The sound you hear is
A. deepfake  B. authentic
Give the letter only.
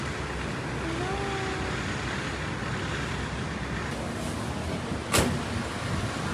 B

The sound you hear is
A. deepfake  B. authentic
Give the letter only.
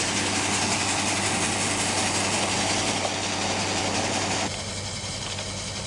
B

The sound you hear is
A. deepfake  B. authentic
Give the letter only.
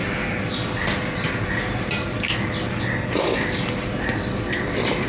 B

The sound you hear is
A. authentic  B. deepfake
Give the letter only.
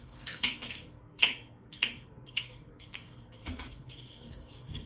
B